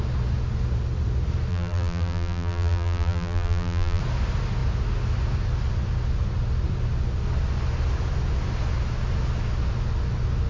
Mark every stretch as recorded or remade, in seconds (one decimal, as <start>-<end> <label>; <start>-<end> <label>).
0.0-1.5 recorded; 1.5-4.0 remade; 4.0-10.5 recorded